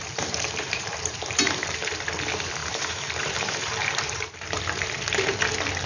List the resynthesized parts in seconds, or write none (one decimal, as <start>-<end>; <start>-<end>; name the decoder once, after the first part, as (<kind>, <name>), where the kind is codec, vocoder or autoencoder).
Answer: 0.0-1.9 (vocoder, BigVGAN v2); 2.6-4.6